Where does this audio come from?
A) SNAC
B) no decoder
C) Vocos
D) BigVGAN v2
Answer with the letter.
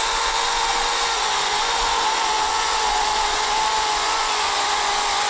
C